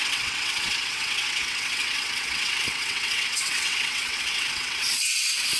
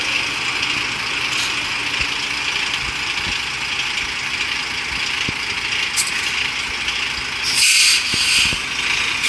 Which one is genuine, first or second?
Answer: second